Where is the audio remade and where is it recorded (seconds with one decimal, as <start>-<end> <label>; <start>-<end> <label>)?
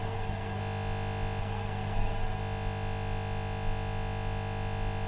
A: 0.0-0.6 remade; 0.6-1.4 recorded; 1.4-2.4 remade; 2.4-5.1 recorded